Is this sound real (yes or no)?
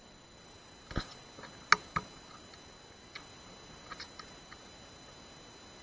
yes